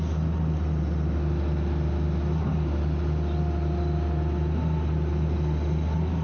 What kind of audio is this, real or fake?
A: real